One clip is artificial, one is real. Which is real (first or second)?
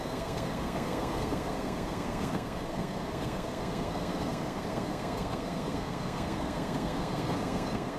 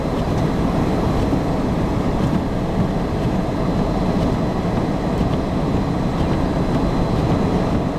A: second